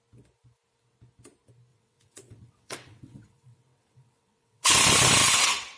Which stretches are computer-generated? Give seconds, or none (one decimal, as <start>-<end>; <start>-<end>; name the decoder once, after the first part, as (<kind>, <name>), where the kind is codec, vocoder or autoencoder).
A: 1.7-4.7 (vocoder, WaveNeXt); 5.2-5.8